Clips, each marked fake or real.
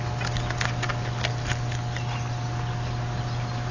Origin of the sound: real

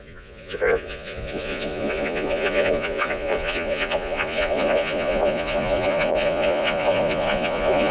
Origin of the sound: fake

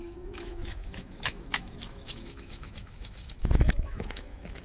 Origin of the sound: fake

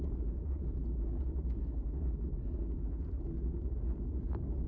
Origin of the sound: fake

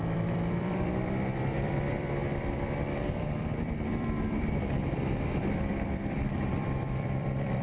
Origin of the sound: fake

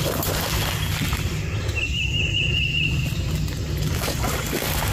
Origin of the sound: real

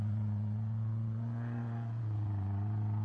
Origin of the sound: fake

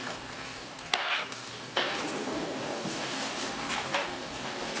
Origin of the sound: fake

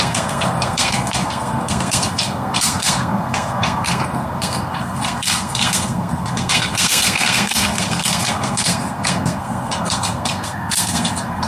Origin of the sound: fake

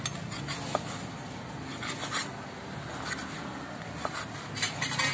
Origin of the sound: real